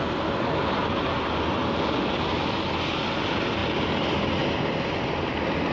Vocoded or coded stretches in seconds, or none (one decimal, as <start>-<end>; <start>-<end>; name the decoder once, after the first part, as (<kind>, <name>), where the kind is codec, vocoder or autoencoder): none